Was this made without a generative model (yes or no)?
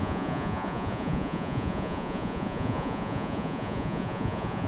no